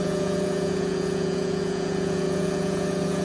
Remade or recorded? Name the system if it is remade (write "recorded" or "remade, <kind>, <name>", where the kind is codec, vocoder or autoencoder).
remade, vocoder, Vocos